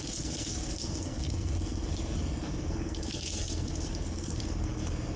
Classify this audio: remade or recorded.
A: remade